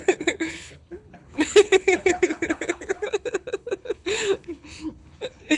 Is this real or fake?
fake